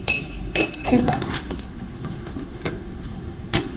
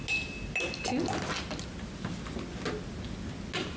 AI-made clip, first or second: first